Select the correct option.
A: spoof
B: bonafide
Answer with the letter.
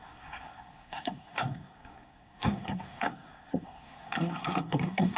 A